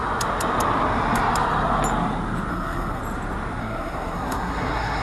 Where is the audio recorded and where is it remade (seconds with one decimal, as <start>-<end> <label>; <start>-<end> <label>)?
0.0-2.5 recorded; 2.5-3.0 remade; 3.0-3.6 recorded; 3.6-5.0 remade